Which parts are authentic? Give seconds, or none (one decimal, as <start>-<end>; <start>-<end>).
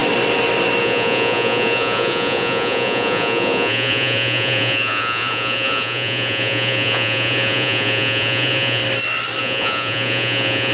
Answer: 0.0-0.8; 8.8-9.4